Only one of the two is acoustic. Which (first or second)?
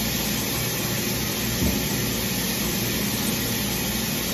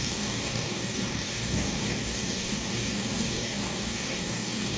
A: first